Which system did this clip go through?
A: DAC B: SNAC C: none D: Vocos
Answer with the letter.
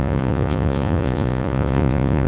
D